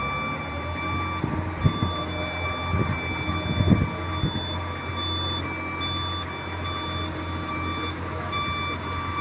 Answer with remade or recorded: recorded